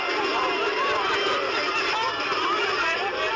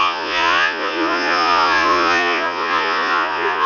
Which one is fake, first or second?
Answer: second